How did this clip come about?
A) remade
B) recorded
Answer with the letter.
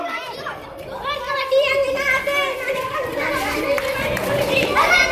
A